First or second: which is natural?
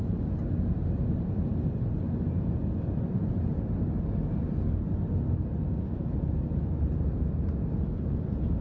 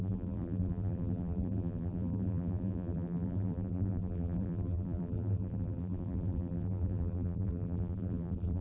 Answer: first